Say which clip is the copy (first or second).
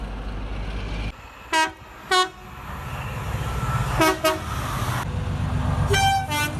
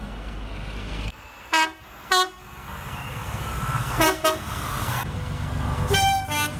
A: second